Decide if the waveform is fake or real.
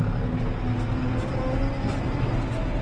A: real